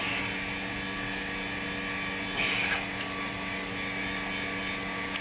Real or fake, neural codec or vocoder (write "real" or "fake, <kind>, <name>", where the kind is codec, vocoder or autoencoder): real